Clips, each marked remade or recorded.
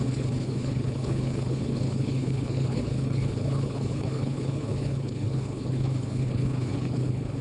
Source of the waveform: remade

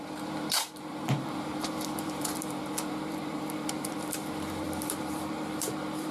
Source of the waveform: remade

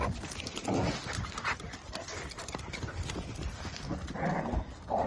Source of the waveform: recorded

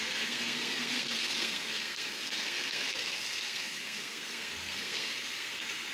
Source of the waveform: remade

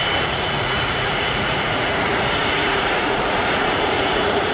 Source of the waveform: remade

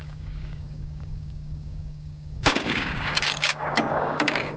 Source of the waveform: remade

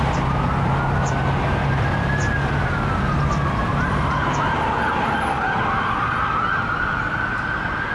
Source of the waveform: recorded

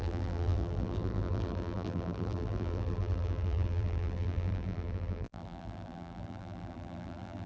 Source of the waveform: remade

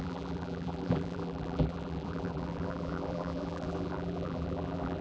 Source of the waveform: remade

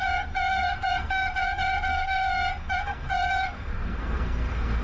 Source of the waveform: remade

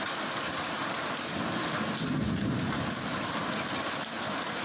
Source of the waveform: recorded